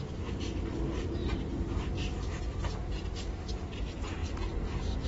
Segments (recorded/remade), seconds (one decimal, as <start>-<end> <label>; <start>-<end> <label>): 0.0-5.1 recorded